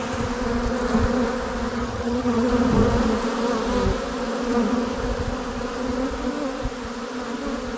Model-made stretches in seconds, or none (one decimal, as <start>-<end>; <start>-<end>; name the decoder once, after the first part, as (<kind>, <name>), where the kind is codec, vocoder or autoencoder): 1.7-2.5 (vocoder, HiFi-GAN)